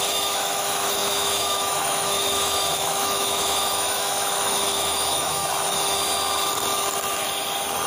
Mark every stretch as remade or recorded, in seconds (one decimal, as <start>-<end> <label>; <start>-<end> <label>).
0.0-5.4 remade; 5.4-7.9 recorded